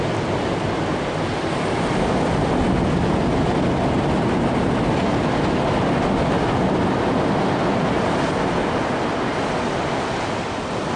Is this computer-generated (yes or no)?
no